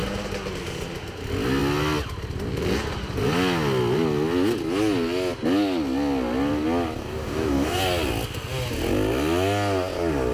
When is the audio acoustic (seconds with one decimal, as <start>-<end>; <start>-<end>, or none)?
0.0-7.0; 7.8-10.3